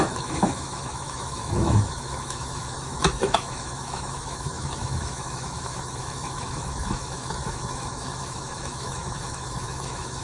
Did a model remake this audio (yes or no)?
yes